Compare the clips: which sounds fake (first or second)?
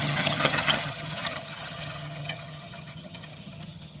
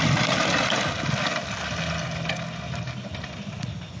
first